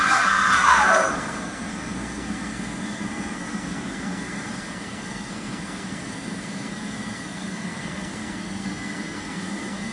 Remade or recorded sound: remade